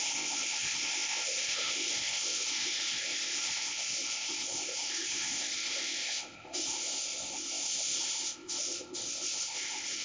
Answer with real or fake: fake